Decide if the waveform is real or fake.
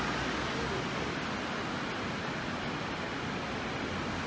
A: real